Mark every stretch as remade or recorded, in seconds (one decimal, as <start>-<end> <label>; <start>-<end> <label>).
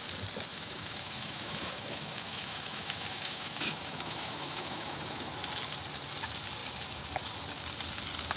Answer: 0.0-0.5 recorded; 0.5-5.3 remade; 5.3-8.4 recorded